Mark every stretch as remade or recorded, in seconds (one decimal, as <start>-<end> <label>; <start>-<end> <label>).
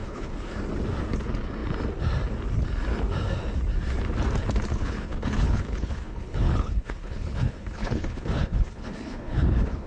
0.0-0.6 remade; 0.6-4.7 recorded; 4.7-9.9 remade